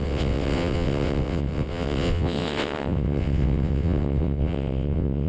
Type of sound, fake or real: fake